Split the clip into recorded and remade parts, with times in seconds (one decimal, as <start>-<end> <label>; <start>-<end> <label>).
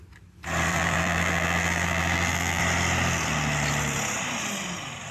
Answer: 0.0-0.7 recorded; 0.7-2.6 remade; 2.6-5.1 recorded